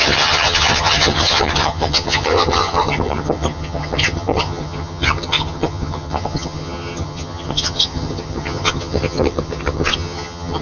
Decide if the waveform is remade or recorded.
remade